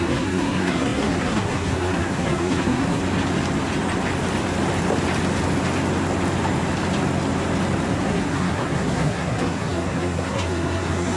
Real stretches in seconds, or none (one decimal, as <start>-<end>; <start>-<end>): 3.0-7.9